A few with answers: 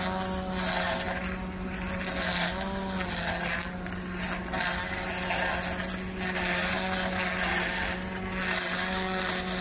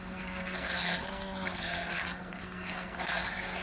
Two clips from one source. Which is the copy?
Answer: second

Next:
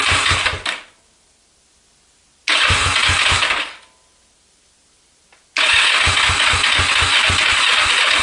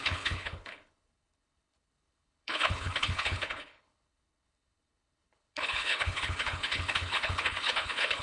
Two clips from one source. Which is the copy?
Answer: second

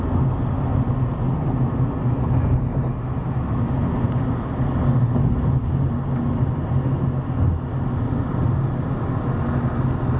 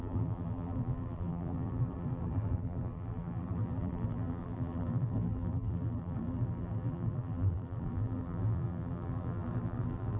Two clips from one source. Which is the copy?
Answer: second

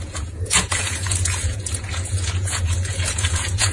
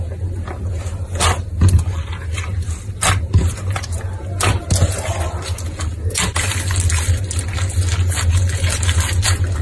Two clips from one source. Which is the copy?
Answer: first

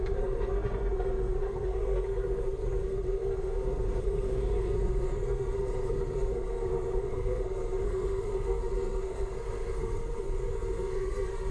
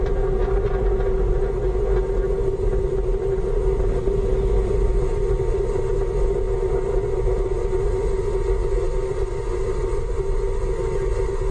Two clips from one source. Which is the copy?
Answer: first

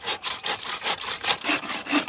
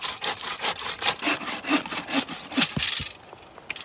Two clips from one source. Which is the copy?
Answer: first